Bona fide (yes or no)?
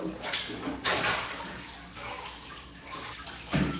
no